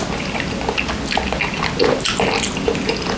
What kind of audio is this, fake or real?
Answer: real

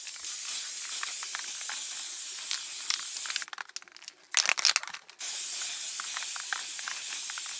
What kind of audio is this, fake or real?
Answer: real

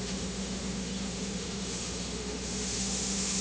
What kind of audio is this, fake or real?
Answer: fake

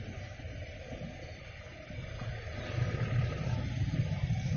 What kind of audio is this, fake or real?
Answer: real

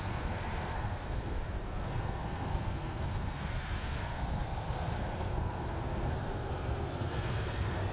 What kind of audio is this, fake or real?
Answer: fake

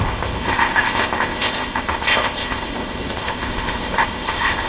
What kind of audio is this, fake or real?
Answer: fake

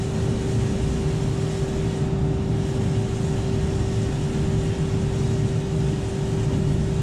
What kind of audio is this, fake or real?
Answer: real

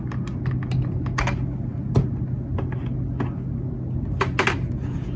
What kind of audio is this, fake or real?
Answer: real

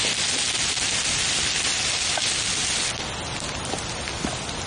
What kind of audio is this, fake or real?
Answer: real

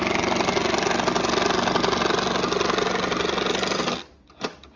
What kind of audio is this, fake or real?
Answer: real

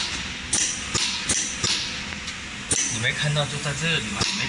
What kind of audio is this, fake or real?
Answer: real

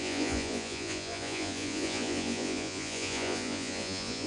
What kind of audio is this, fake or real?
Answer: fake